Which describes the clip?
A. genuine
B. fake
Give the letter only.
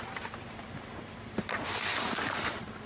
A